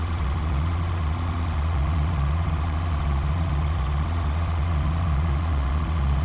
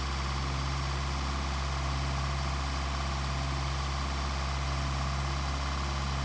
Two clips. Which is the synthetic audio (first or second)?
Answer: first